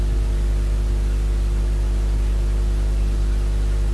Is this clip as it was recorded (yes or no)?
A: yes